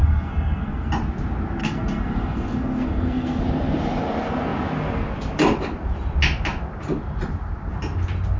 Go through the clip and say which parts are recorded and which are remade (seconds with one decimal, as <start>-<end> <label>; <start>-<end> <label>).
0.0-0.9 remade; 0.9-1.6 recorded; 1.6-3.4 remade; 3.4-8.4 recorded